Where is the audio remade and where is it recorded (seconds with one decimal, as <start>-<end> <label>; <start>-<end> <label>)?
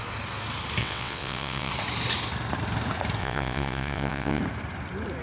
0.0-0.8 recorded; 0.8-1.7 remade; 1.7-3.2 recorded; 3.2-4.4 remade; 4.4-5.2 recorded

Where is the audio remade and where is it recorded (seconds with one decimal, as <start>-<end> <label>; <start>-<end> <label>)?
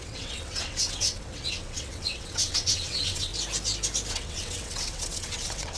0.0-3.3 remade; 3.3-4.1 recorded; 4.1-5.8 remade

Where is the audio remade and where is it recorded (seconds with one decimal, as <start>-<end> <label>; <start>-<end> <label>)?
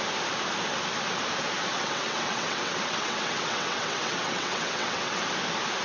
0.0-1.7 recorded; 1.7-5.2 remade; 5.2-5.8 recorded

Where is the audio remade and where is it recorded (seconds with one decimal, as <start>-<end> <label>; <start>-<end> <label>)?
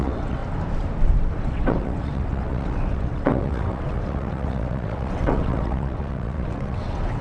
0.0-0.4 remade; 0.4-1.4 recorded; 1.4-7.2 remade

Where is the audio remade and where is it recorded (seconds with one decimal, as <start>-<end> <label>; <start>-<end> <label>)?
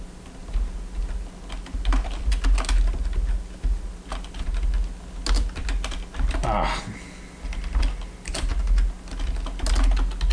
0.0-10.3 recorded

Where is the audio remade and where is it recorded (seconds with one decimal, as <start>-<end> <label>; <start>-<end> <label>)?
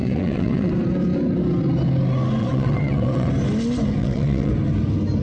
0.0-0.7 remade; 0.7-2.4 recorded; 2.4-3.3 remade; 3.3-4.0 recorded; 4.0-4.5 remade; 4.5-5.2 recorded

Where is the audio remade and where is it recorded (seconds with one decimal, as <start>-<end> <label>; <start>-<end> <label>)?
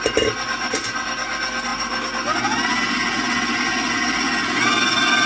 0.0-5.3 recorded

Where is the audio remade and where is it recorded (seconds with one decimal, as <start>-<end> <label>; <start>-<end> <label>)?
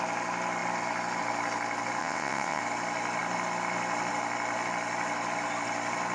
0.0-2.0 recorded; 2.0-2.6 remade; 2.6-6.1 recorded